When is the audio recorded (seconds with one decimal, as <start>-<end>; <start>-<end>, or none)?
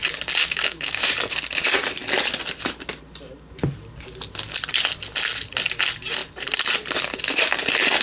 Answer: 0.0-0.4; 1.1-8.0